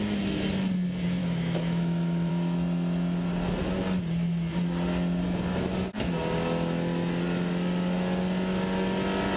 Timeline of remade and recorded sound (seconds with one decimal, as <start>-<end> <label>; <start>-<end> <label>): 0.0-1.2 recorded; 1.2-2.3 remade; 2.3-9.4 recorded